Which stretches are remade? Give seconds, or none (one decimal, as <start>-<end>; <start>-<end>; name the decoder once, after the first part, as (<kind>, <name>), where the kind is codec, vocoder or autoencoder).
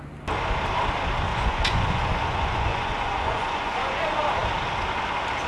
1.3-4.0 (vocoder, Vocos)